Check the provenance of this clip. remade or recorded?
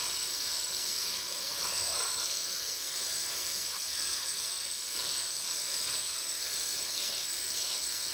remade